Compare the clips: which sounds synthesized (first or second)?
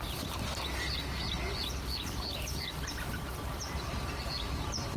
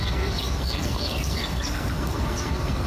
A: second